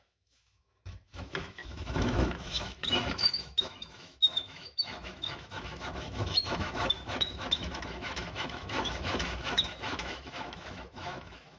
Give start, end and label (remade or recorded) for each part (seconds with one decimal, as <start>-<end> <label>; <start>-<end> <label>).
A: 0.0-11.6 remade